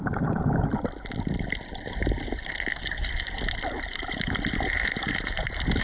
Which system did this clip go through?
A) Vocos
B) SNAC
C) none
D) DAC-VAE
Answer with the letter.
C